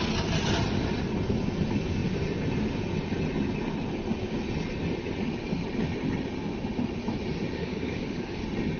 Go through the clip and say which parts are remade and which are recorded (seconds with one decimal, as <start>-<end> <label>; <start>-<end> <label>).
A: 0.0-7.6 recorded; 7.6-8.4 remade; 8.4-8.8 recorded